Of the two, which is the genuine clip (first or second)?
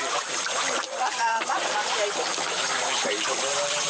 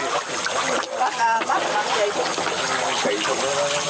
second